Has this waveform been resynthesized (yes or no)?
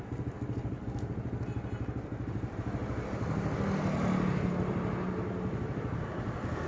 no